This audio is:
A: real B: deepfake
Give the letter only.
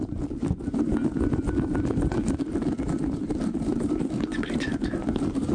A